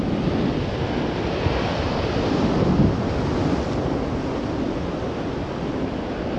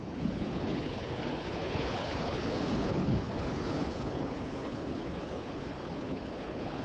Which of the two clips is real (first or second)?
first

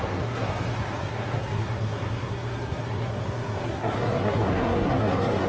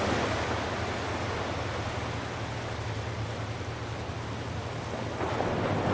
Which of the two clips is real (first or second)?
second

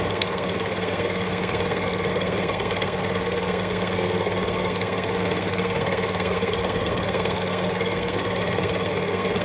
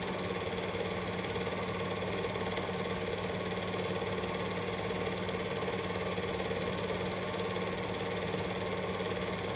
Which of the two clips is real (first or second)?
second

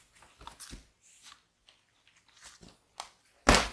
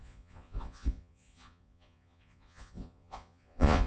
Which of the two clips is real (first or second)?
first